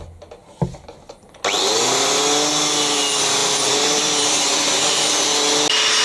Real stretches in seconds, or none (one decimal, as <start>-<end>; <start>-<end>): 0.0-3.4; 5.3-6.0